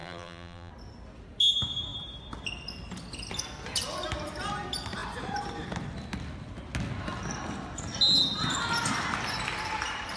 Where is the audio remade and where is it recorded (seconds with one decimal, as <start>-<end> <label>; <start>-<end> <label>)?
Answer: 0.0-0.7 remade; 0.7-10.2 recorded